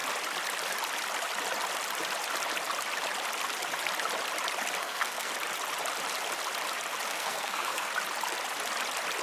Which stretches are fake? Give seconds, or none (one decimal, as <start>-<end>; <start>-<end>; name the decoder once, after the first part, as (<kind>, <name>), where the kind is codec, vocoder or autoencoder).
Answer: 4.8-5.3 (codec, SNAC); 7.1-7.9